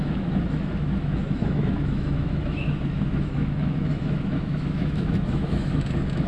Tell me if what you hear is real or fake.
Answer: fake